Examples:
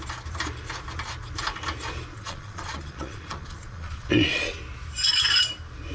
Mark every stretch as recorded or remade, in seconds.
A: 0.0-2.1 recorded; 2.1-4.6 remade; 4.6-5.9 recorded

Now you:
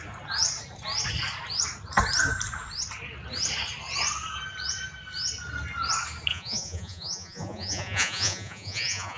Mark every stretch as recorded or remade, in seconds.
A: 0.0-6.3 recorded; 6.3-9.2 remade

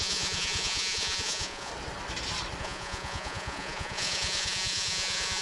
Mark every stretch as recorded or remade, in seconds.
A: 0.0-1.7 remade; 1.7-2.6 recorded; 2.6-5.4 remade

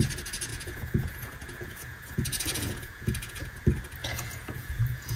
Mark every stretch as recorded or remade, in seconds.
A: 0.0-0.5 recorded; 0.5-3.6 remade; 3.6-4.0 recorded; 4.0-5.2 remade

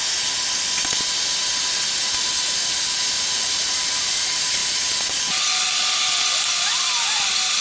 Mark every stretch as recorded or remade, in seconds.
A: 0.0-7.6 recorded